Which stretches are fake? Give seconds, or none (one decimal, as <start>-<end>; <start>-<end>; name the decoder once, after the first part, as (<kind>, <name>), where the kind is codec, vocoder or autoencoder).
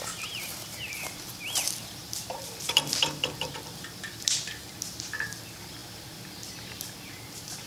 0.0-7.7 (vocoder, BigVGAN v2)